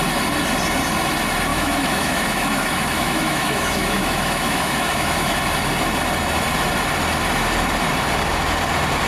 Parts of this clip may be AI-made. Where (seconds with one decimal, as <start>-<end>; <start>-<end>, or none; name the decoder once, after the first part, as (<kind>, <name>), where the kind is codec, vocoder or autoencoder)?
1.5-5.4 (autoencoder, DAC-VAE)